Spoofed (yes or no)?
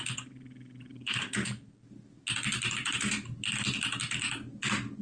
no